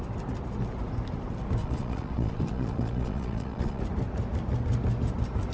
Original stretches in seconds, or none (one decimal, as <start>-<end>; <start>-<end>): 0.0-1.6; 3.8-5.5